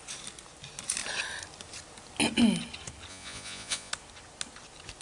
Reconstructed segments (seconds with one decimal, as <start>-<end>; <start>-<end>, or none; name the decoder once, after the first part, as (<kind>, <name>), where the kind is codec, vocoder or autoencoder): 3.1-3.9 (vocoder, Vocos)